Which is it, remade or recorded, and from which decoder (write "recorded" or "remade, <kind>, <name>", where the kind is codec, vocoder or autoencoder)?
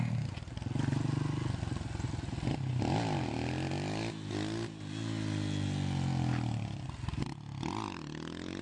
recorded